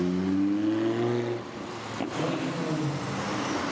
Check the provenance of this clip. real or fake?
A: real